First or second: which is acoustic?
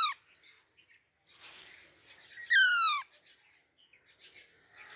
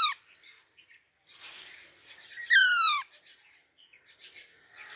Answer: first